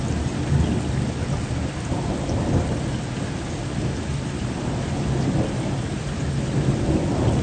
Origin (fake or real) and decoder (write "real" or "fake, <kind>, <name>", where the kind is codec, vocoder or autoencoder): real